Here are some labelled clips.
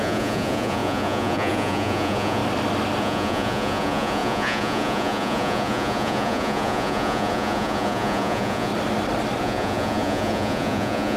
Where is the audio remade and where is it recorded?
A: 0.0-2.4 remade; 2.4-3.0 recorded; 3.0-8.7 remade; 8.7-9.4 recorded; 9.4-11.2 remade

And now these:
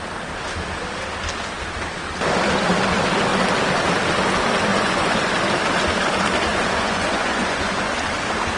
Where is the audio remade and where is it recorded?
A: 0.0-4.7 recorded; 4.7-5.3 remade; 5.3-6.5 recorded; 6.5-7.9 remade; 7.9-8.6 recorded

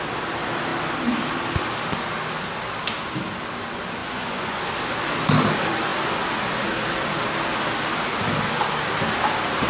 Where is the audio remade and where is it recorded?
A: 0.0-4.0 recorded; 4.0-4.6 remade; 4.6-9.7 recorded

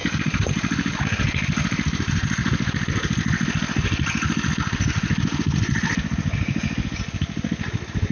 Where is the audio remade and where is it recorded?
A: 0.0-8.1 recorded

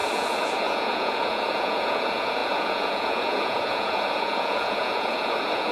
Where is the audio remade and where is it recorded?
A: 0.0-5.7 remade

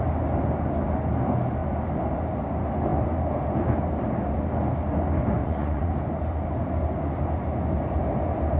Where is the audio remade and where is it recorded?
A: 0.0-5.4 recorded; 5.4-5.9 remade; 5.9-8.6 recorded

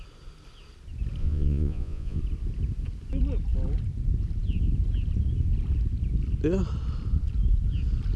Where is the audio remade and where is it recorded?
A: 0.0-1.2 recorded; 1.2-2.2 remade; 2.2-8.2 recorded